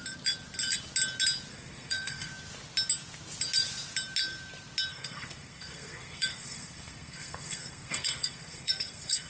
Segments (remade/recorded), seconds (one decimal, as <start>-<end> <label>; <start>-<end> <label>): 0.0-1.5 recorded; 1.5-2.3 remade; 2.3-4.9 recorded; 4.9-9.3 remade